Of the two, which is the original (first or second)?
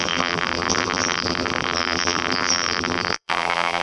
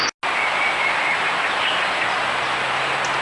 second